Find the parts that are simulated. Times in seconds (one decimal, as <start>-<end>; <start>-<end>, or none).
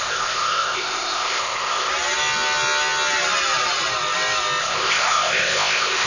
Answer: 0.0-1.9; 4.6-6.1